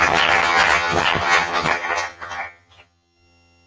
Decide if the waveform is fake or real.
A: fake